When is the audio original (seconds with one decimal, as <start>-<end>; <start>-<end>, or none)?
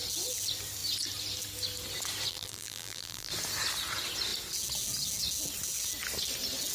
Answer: 0.0-2.3; 3.3-6.7